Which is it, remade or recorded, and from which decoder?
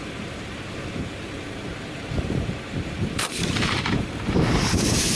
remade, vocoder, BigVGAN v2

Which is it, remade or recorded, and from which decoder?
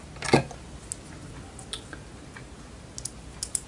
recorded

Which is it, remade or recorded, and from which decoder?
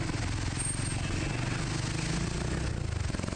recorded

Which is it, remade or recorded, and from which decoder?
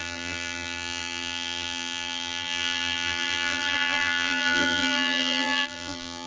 remade, vocoder, BigVGAN v2